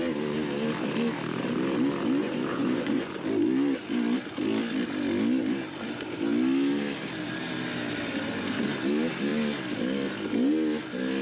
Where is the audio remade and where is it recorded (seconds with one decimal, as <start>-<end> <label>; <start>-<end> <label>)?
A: 0.0-2.2 recorded; 2.2-3.1 remade; 3.1-11.2 recorded